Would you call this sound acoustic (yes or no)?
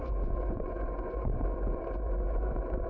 no